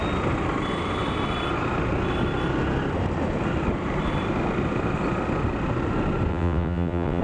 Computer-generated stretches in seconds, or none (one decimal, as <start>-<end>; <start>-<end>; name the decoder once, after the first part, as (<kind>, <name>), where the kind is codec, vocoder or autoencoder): 6.3-7.2 (vocoder, WaveNeXt)